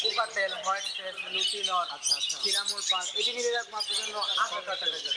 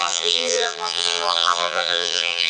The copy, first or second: second